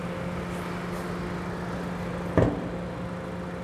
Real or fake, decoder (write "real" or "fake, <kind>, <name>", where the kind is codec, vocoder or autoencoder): real